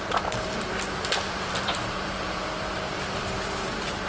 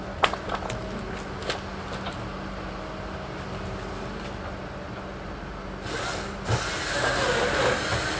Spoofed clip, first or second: first